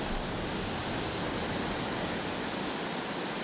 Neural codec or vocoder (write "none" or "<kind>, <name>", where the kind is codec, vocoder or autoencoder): vocoder, BigVGAN v2